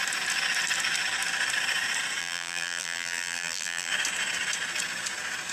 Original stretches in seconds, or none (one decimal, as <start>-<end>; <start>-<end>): 0.0-2.2; 3.9-5.5